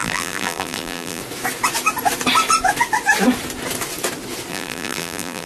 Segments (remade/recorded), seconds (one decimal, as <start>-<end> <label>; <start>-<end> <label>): 0.0-1.2 remade; 1.2-4.5 recorded; 4.5-5.5 remade